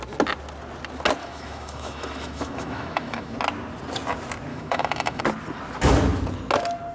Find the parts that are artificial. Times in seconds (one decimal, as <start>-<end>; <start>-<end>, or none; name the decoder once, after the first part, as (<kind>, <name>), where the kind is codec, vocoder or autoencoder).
1.2-3.3 (autoencoder, DAC-VAE); 4.5-5.2